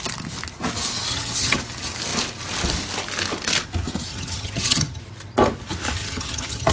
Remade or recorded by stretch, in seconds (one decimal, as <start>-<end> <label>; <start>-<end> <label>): 0.0-1.1 recorded; 1.1-1.6 remade; 1.6-4.1 recorded; 4.1-5.0 remade; 5.0-6.0 recorded; 6.0-6.7 remade